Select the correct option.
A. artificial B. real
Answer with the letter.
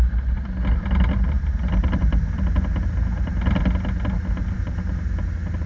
B